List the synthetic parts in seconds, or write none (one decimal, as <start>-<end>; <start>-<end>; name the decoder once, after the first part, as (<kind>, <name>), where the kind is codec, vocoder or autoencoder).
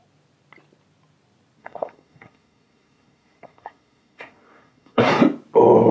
1.6-5.1 (codec, SNAC)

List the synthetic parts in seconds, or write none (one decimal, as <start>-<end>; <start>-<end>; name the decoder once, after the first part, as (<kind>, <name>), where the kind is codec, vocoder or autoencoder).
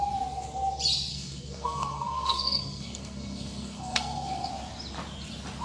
1.1-4.5 (codec, SNAC)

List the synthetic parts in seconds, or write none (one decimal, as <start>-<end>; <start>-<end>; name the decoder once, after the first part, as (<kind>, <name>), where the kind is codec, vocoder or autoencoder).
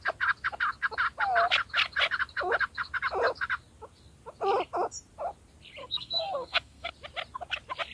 5.8-6.9 (codec, SNAC)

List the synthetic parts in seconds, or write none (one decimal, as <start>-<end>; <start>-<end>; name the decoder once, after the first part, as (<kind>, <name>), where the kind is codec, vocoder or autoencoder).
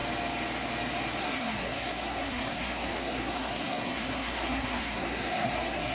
1.2-5.9 (codec, SNAC)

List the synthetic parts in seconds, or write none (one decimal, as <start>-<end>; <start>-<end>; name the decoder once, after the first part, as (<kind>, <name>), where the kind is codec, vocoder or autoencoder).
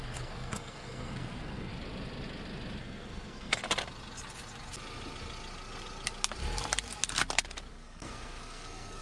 0.0-1.7 (codec, SNAC); 2.8-3.6; 7.7-9.0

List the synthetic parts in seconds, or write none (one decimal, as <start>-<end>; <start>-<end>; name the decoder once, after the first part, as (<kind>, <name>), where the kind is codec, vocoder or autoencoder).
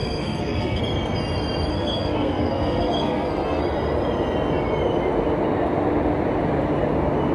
0.0-0.8 (codec, SNAC); 1.7-3.6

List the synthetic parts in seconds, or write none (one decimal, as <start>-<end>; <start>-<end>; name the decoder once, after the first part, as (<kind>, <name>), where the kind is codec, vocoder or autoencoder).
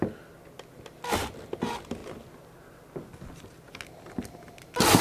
none